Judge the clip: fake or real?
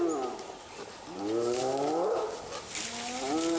real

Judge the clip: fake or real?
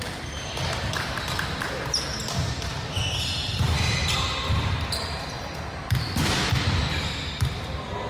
real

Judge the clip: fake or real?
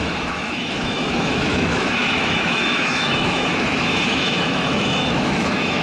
fake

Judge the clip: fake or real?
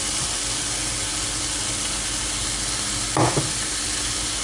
real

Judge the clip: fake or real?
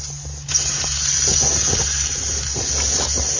real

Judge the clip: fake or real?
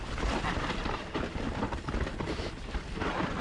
fake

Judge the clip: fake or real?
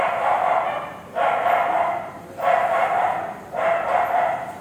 fake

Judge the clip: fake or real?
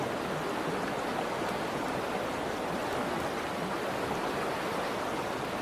real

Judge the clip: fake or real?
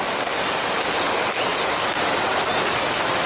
real